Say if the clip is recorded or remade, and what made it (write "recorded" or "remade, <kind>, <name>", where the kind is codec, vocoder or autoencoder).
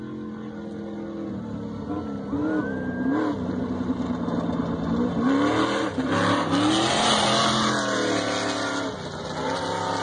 recorded